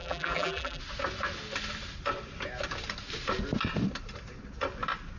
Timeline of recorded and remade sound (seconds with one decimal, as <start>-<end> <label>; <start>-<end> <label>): 0.0-0.8 remade; 0.8-5.2 recorded